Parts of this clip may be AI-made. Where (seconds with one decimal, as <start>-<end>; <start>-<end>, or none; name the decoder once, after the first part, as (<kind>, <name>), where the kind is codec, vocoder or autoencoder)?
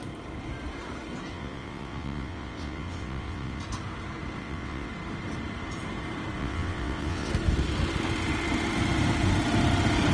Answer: 1.3-3.6 (vocoder, WaveNeXt); 4.4-4.9; 6.4-7.3